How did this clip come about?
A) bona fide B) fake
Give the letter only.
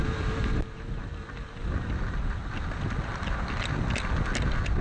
A